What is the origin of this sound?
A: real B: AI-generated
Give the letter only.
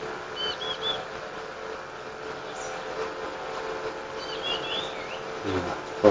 A